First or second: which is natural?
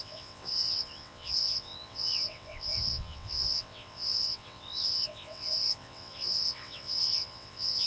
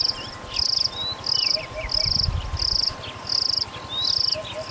second